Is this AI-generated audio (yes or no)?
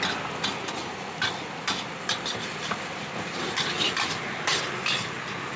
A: no